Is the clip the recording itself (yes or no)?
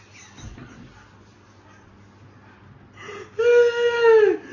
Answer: yes